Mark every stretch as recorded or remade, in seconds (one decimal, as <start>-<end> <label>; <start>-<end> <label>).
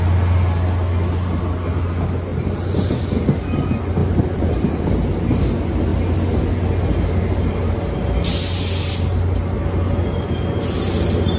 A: 0.0-2.3 recorded; 2.3-3.0 remade; 3.0-4.0 recorded; 4.0-4.9 remade; 4.9-11.4 recorded